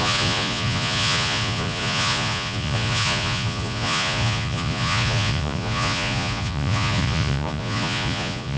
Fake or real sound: fake